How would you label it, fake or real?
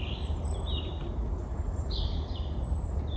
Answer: real